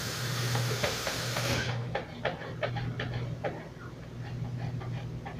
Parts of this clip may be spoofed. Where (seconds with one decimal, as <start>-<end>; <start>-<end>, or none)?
0.0-2.0